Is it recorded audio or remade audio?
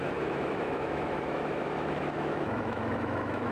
remade